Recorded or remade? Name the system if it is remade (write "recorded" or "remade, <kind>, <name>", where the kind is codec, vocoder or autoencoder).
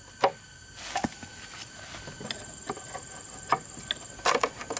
recorded